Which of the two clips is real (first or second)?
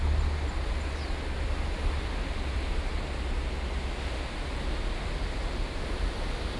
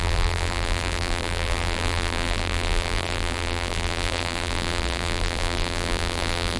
first